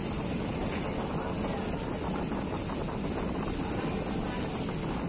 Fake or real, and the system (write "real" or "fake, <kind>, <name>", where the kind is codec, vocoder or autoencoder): real